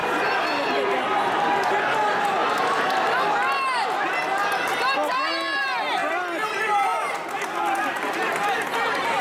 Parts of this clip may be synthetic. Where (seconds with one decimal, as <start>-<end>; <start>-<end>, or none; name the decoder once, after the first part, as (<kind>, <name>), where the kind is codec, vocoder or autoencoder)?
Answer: none